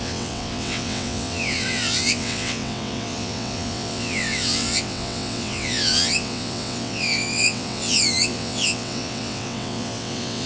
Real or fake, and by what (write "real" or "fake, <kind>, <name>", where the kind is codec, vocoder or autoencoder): fake, vocoder, WaveNeXt